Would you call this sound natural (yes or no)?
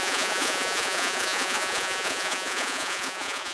no